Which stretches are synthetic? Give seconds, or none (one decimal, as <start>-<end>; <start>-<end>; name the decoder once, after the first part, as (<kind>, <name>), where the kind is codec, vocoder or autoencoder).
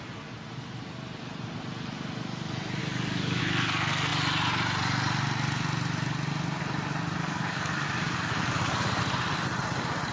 2.8-3.4 (codec, DAC); 7.2-9.0